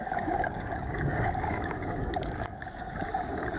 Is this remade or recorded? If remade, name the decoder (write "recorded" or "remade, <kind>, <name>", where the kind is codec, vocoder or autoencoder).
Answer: remade, codec, DAC